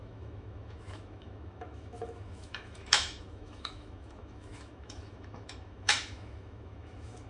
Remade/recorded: remade